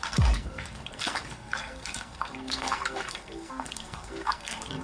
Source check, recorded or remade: remade